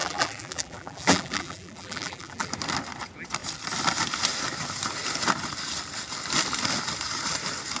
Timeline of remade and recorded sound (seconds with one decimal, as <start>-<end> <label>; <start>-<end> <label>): 0.0-2.5 remade; 2.5-7.8 recorded